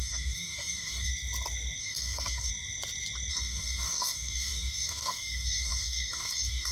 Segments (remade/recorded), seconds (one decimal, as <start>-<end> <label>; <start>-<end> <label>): 0.0-1.1 remade; 1.1-1.8 recorded; 1.8-2.5 remade; 2.5-3.3 recorded; 3.3-6.7 remade